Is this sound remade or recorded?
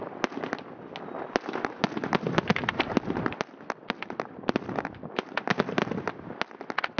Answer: recorded